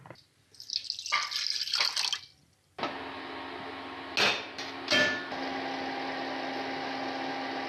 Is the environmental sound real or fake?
real